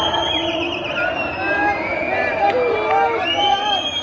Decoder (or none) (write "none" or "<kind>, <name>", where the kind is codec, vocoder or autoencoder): none